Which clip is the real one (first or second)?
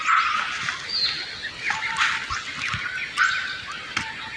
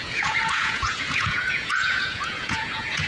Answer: first